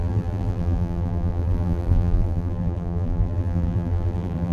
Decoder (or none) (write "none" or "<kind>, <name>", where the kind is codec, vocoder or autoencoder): vocoder, BigVGAN v2